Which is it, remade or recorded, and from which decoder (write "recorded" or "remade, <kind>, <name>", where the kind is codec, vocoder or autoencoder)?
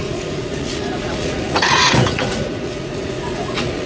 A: remade, vocoder, Vocos